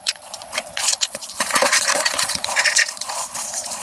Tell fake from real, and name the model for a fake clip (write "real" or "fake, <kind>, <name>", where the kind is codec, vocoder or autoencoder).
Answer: fake, vocoder, Vocos